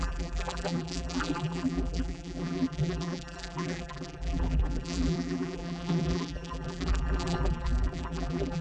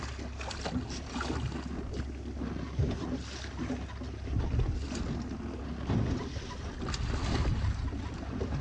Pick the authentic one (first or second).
second